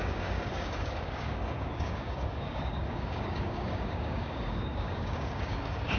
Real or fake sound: fake